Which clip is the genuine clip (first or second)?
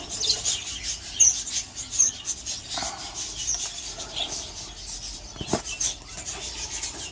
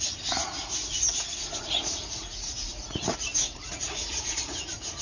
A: first